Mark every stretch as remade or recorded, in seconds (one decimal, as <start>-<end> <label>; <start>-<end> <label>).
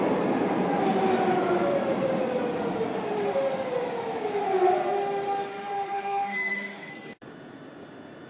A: 0.0-5.5 recorded; 5.5-6.9 remade; 6.9-8.3 recorded